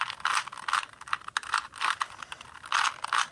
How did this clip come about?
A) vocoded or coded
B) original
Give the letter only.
B